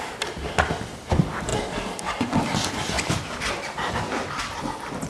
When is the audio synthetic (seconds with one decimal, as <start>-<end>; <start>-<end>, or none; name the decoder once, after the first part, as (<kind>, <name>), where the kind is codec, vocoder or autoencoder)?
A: none